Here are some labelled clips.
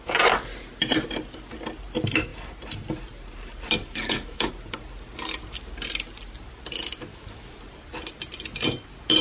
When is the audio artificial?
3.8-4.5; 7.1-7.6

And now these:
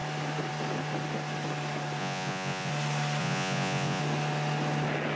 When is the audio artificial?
2.0-2.7; 3.2-4.0

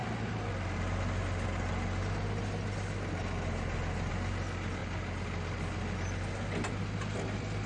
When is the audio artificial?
none

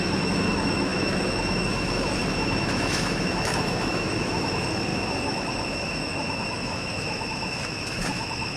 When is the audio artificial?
0.0-8.6

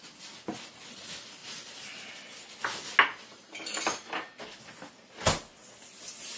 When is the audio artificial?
none

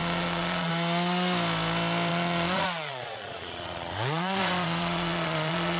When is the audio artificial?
0.0-0.7; 2.1-5.8

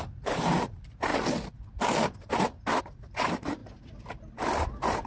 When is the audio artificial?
0.0-1.1; 2.8-3.6